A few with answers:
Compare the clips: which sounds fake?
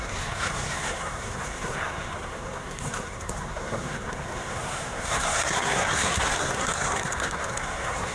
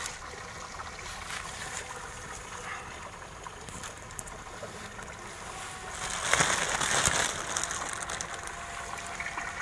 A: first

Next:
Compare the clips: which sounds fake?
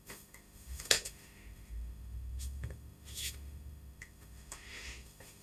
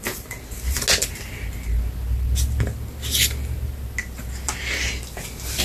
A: first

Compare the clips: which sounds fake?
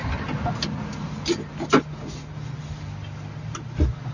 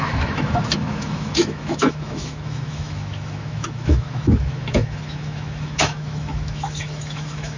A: second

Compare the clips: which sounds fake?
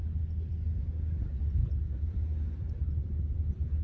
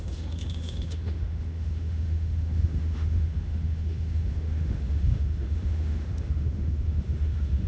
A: second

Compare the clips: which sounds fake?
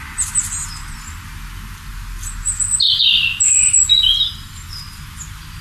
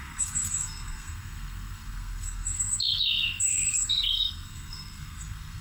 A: second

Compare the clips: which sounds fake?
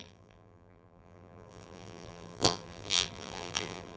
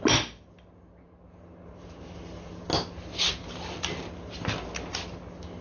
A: first